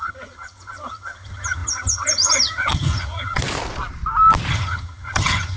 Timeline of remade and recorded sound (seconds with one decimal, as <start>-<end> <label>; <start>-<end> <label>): 0.0-3.4 remade; 3.4-4.5 recorded; 4.5-5.6 remade